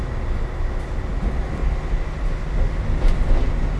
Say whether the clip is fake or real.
real